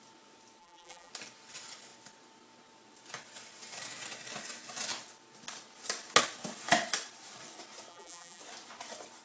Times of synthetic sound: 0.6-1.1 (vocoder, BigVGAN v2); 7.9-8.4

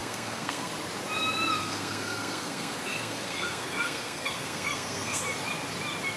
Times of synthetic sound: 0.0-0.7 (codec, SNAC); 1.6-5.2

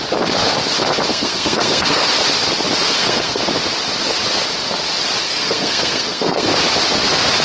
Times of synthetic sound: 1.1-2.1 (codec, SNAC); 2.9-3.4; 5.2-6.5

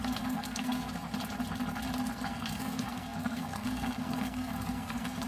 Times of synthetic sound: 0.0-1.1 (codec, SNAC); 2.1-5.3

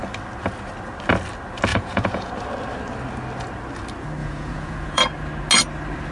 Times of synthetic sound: 1.7-2.3 (vocoder, Vocos); 4.2-5.0

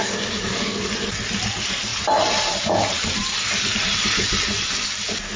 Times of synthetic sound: 0.0-0.9 (codec, DAC)

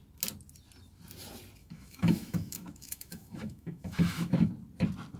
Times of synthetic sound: 1.6-4.5 (autoencoder, DAC-VAE)